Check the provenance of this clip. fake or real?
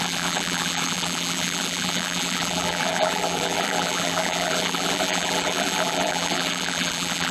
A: fake